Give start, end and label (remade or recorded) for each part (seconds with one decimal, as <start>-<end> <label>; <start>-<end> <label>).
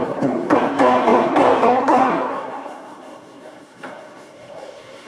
0.0-5.1 remade